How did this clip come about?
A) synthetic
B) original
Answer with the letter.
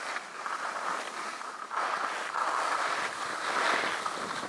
B